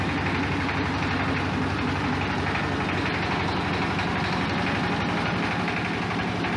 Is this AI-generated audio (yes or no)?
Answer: no